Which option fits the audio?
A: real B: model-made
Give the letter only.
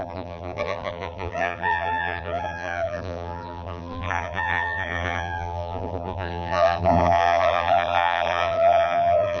B